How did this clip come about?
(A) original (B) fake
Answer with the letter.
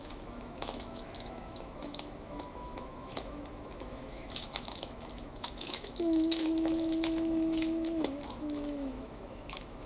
B